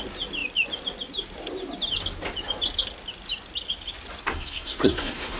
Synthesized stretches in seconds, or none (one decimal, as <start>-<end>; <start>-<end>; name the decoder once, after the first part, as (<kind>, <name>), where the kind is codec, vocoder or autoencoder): 4.2-5.4 (codec, SNAC)

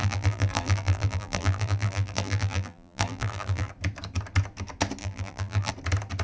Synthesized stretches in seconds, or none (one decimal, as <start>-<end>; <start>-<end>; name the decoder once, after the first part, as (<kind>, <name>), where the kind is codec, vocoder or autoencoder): 0.0-3.7 (vocoder, BigVGAN v2); 5.0-5.7

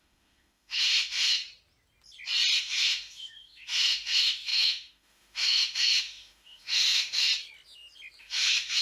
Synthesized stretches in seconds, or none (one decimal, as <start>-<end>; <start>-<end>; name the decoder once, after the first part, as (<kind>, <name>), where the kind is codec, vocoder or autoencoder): 0.0-1.4 (autoencoder, DAC-VAE); 2.6-7.3; 8.2-8.8